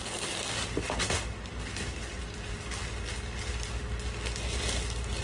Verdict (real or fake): real